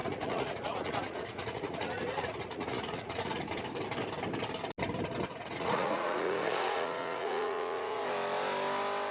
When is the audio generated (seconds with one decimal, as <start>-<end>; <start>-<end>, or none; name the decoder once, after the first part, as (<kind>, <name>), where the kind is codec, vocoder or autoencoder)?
0.0-3.6 (vocoder, Vocos); 5.3-8.0